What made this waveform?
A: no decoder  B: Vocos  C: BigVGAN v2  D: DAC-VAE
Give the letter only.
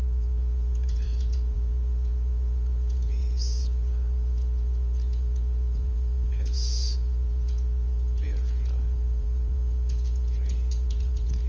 B